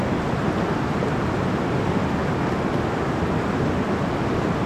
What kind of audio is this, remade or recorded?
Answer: recorded